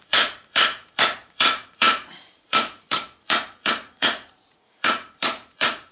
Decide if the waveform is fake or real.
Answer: fake